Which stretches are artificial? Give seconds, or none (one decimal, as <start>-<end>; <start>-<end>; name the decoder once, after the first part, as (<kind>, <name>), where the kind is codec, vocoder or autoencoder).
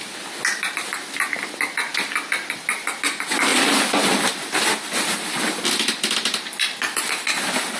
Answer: none